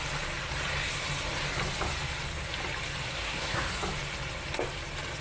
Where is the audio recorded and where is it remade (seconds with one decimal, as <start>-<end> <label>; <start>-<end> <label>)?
0.0-3.1 recorded; 3.1-3.7 remade; 3.7-5.2 recorded